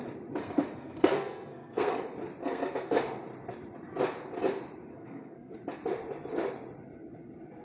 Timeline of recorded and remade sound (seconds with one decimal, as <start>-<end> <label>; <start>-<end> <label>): 0.0-0.4 recorded; 0.4-2.0 remade; 2.0-2.4 recorded; 2.4-3.0 remade; 3.0-4.9 recorded; 4.9-5.5 remade; 5.5-7.6 recorded